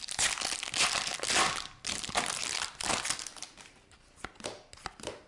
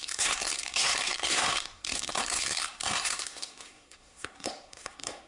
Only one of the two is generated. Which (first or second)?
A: second